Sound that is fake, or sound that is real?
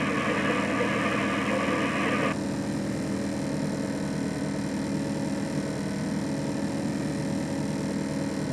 real